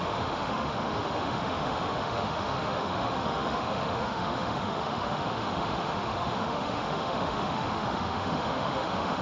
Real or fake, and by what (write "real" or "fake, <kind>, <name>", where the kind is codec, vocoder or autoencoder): fake, autoencoder, DAC-VAE